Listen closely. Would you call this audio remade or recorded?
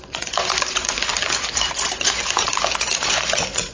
remade